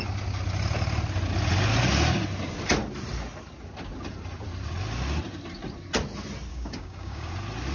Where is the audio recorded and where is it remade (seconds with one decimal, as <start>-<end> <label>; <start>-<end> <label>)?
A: 0.0-6.5 recorded; 6.5-7.3 remade; 7.3-7.7 recorded